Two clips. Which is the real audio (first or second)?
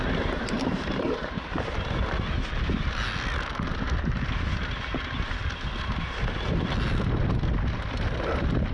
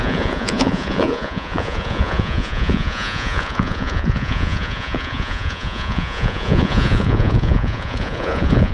first